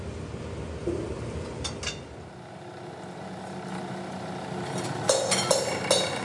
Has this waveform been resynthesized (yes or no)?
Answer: no